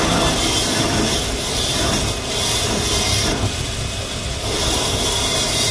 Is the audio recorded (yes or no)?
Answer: no